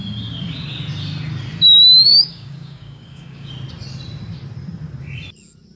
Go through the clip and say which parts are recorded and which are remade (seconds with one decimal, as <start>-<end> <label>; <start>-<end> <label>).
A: 0.0-2.1 recorded; 2.1-3.5 remade; 3.5-5.8 recorded

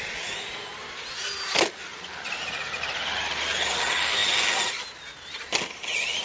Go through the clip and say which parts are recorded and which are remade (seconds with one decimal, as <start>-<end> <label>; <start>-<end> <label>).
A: 0.0-6.2 recorded

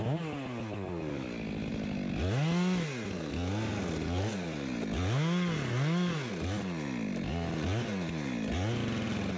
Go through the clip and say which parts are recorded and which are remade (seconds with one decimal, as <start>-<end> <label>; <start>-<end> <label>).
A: 0.0-9.4 recorded

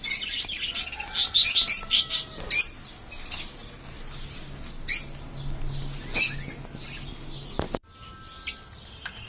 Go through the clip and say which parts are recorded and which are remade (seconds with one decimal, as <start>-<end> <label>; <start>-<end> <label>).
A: 0.0-9.3 recorded

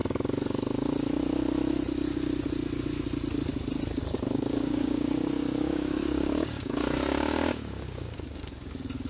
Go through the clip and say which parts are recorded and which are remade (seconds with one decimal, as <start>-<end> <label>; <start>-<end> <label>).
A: 0.0-4.0 recorded; 4.0-8.7 remade; 8.7-9.1 recorded